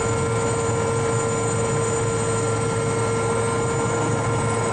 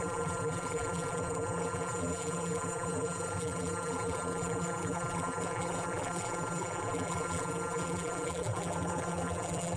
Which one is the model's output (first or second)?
second